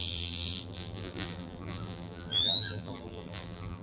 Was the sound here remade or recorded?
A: remade